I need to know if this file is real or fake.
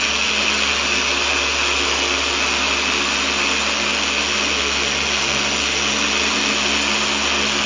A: real